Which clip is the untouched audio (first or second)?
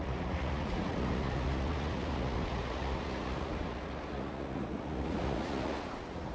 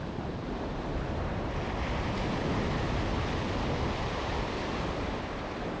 second